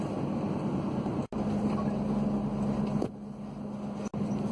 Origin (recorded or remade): recorded